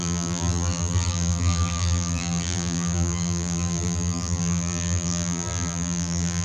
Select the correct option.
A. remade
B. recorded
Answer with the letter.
A